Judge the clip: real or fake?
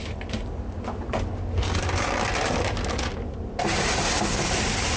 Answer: real